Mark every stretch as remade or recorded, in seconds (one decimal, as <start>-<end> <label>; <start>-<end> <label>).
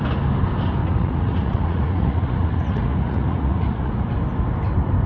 0.0-0.8 recorded; 0.8-3.9 remade; 3.9-5.1 recorded